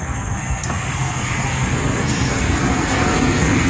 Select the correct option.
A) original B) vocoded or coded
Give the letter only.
B